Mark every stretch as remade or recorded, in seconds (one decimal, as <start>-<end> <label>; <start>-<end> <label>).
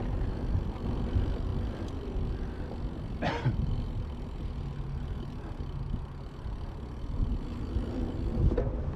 0.0-9.0 recorded